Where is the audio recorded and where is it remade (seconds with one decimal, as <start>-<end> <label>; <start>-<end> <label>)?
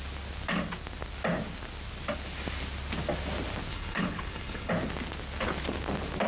0.0-3.7 recorded; 3.7-4.7 remade; 4.7-6.3 recorded